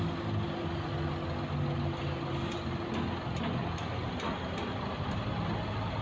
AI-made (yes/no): no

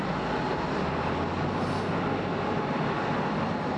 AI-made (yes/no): no